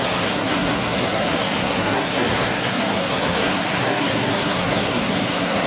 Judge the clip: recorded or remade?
remade